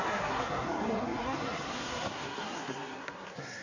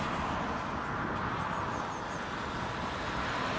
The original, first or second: second